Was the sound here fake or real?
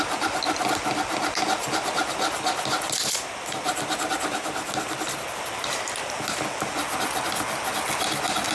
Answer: real